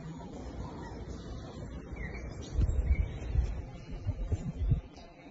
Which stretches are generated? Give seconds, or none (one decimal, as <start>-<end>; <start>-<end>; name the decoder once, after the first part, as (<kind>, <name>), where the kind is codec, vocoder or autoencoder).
0.0-0.4 (vocoder, BigVGAN v2); 3.6-5.3